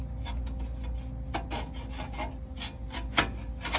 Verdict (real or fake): real